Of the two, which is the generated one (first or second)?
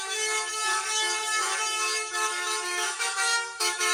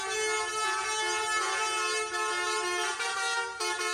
first